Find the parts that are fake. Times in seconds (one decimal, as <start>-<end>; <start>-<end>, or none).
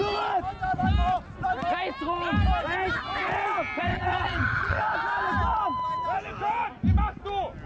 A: 3.9-4.8